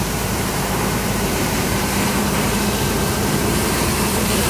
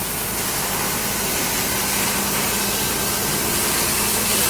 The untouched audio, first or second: second